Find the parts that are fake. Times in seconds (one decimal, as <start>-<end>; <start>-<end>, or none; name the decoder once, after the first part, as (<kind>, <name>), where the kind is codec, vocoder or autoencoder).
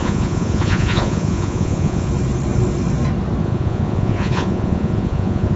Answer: 0.0-2.1 (vocoder, Vocos); 3.4-5.6